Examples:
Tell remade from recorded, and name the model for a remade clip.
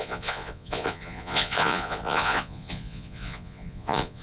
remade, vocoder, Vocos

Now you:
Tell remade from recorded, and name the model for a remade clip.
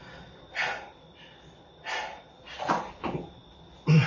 recorded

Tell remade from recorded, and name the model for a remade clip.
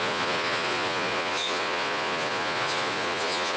remade, vocoder, Vocos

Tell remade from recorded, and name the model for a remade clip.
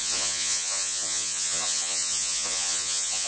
remade, vocoder, Vocos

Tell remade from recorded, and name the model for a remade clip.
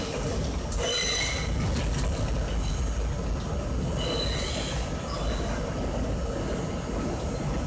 recorded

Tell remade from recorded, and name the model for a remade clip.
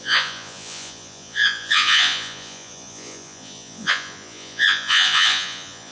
remade, vocoder, Vocos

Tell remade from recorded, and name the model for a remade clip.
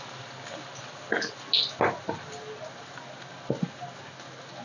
recorded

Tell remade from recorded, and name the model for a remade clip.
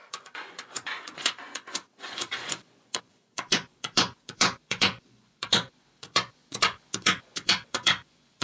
remade, vocoder, Vocos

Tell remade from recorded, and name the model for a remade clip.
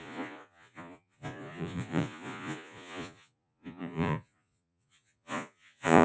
remade, vocoder, Vocos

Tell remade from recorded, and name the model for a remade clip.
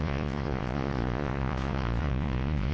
remade, vocoder, Vocos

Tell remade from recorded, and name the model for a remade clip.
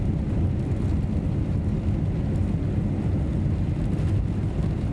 recorded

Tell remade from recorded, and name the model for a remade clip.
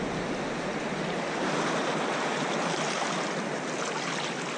recorded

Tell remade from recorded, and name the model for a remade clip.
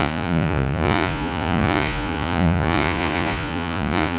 remade, vocoder, Vocos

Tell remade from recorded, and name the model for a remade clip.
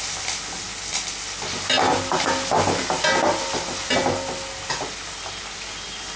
recorded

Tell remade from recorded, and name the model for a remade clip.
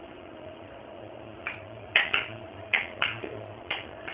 remade, vocoder, Vocos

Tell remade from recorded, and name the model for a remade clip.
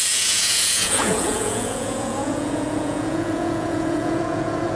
remade, vocoder, Vocos